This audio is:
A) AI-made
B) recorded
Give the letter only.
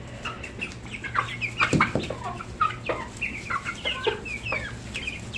B